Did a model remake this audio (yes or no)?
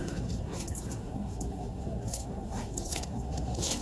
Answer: yes